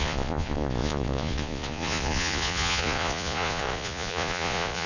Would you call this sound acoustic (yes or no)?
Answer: no